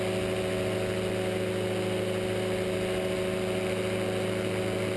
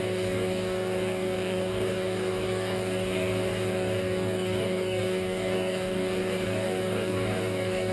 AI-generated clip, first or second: second